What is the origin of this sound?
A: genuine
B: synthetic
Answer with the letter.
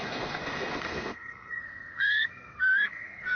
B